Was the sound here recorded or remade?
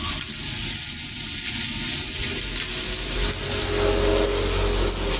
recorded